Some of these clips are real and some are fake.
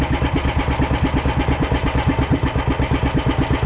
real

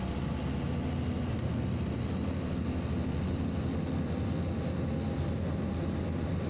real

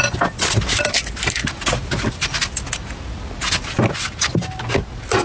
real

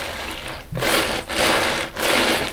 real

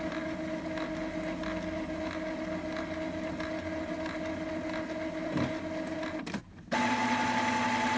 real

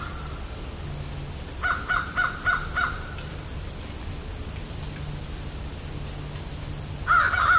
real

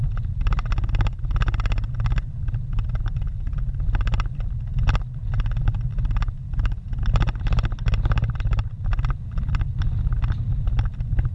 real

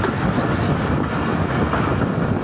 real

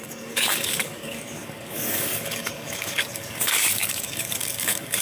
fake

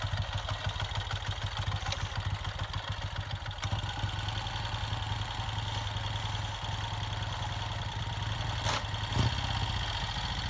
real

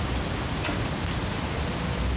real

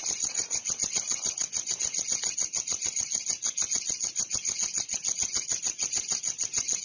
real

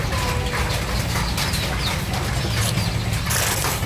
real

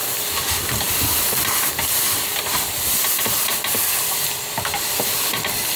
real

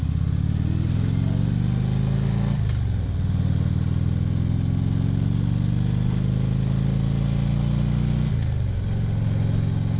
real